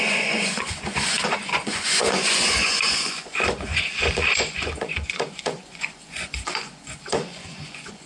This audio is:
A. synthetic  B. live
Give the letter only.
A